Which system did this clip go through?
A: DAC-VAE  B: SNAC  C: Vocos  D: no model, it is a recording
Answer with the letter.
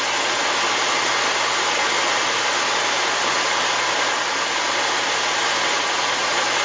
D